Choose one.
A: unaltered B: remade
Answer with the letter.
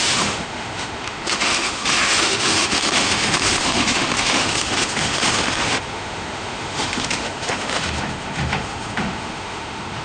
B